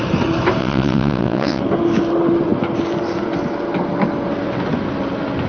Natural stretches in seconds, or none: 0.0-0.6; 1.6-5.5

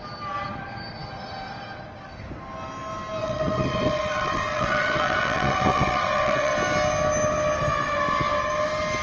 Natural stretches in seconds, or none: 0.0-3.2; 6.5-9.0

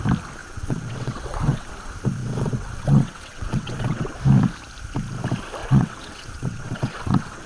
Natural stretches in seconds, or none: 0.0-0.4; 1.7-2.2; 4.2-5.6

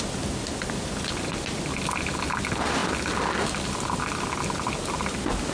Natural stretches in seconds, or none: 0.0-5.5

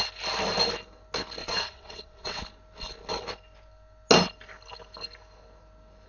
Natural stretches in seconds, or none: 0.0-1.4; 2.4-6.1

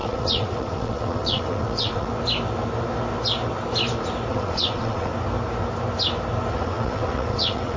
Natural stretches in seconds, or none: 2.1-4.3; 5.1-6.5

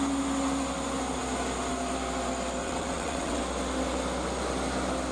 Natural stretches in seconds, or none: 0.0-2.6; 3.4-5.1